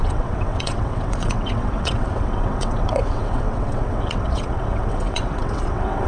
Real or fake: fake